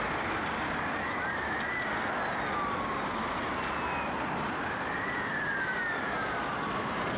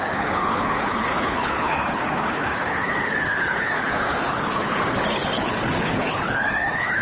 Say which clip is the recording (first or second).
first